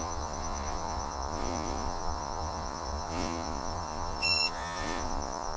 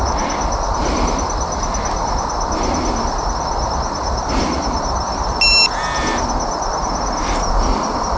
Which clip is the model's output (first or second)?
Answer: first